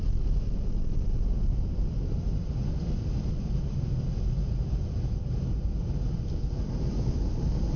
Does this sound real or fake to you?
real